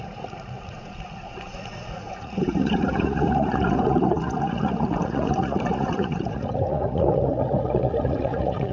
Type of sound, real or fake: fake